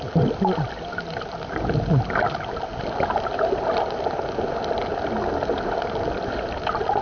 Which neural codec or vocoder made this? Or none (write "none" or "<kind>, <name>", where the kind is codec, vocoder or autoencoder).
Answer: none